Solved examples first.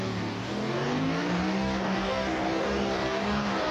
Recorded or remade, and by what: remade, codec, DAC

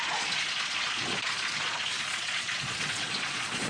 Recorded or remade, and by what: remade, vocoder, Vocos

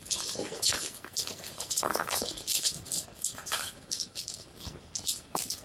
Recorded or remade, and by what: remade, codec, SNAC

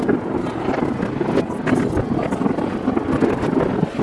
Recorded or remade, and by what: recorded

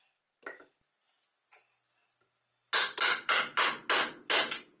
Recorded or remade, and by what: recorded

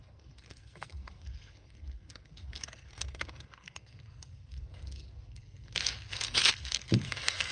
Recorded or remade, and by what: remade, codec, SNAC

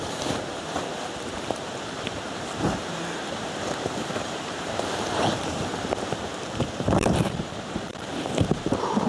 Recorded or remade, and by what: remade, vocoder, BigVGAN v2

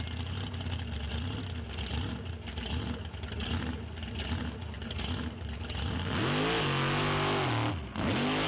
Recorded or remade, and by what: recorded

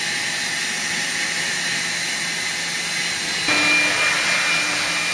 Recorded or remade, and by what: recorded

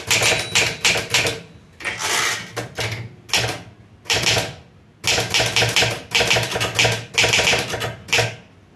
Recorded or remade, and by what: recorded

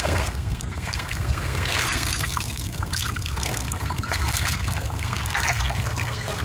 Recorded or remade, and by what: remade, codec, SNAC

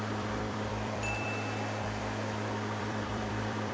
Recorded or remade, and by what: remade, vocoder, BigVGAN v2